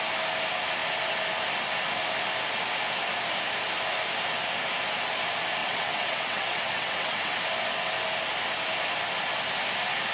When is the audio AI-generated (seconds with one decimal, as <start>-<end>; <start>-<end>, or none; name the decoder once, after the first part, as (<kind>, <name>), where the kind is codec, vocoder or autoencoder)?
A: 5.6-7.4 (vocoder, WaveNeXt)